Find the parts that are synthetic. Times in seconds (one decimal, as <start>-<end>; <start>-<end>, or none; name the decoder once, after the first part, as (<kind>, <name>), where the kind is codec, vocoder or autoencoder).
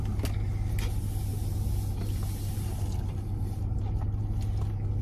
none